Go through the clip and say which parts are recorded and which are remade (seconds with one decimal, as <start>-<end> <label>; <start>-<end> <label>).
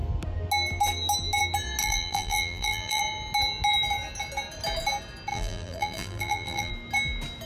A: 0.0-1.8 recorded; 1.8-3.0 remade; 3.0-5.3 recorded; 5.3-6.7 remade; 6.7-7.5 recorded